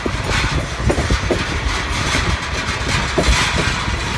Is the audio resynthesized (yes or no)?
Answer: no